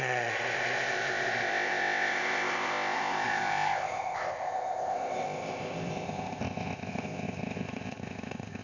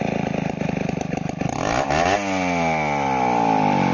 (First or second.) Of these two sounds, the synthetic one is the first